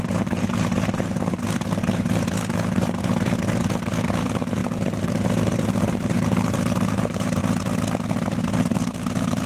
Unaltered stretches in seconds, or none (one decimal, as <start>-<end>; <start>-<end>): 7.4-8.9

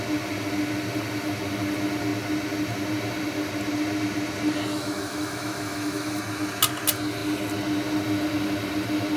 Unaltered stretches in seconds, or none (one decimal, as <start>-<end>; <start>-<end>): 0.0-4.7; 6.2-9.2

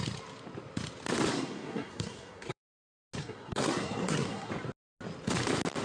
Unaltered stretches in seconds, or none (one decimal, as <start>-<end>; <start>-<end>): 0.0-1.3; 2.8-3.2; 4.5-5.8